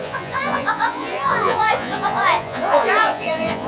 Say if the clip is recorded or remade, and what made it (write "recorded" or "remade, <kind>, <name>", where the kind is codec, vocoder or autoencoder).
remade, vocoder, Vocos